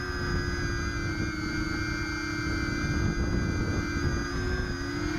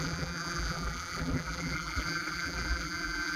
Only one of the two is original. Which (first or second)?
first